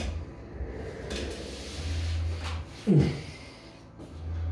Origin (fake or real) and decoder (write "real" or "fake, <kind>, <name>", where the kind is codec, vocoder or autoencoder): real